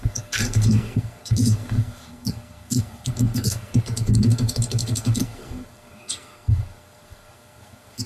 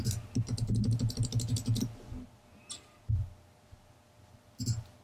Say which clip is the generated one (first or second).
first